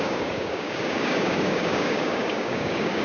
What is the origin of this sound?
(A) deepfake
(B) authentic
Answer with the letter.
A